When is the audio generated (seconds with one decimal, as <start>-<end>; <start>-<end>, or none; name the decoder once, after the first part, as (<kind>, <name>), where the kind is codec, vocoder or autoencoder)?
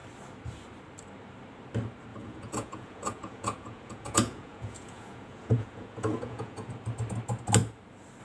2.1-6.7 (vocoder, Vocos)